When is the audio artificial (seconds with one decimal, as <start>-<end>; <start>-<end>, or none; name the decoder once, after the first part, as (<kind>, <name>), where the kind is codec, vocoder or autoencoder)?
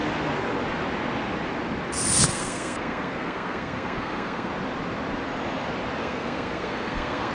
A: 2.3-4.5 (codec, SNAC); 6.0-7.3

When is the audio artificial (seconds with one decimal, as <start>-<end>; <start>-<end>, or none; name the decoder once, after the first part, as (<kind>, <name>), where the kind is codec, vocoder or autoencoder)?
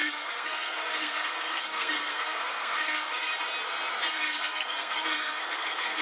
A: 0.0-3.3 (codec, SNAC); 4.1-6.0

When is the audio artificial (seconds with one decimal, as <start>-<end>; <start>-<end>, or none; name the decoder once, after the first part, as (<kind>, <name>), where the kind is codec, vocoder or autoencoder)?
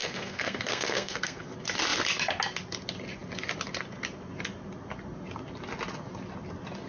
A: 0.0-1.4 (codec, SNAC)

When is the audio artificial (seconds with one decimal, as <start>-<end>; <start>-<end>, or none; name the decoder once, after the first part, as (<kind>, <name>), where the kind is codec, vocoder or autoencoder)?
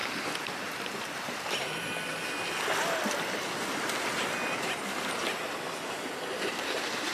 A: none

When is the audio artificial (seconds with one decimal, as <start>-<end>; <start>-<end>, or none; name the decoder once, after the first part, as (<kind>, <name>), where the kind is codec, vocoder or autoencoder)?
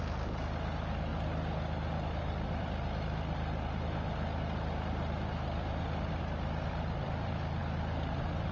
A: none